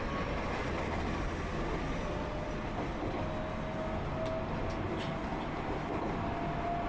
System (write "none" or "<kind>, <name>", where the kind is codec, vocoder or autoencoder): none